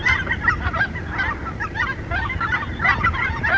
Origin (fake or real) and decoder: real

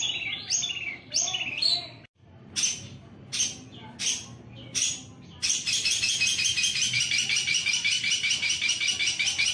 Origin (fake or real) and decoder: real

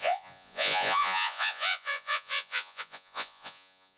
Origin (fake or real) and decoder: fake, vocoder, Vocos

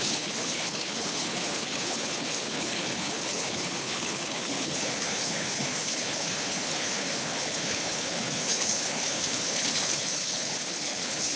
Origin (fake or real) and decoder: fake, codec, HILCodec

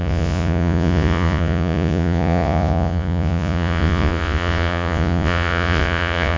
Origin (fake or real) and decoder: fake, vocoder, Vocos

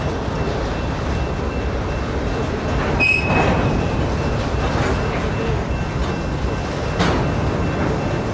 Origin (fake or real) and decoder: real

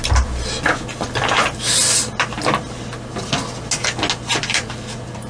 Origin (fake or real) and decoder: real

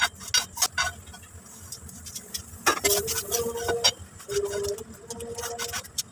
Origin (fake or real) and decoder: real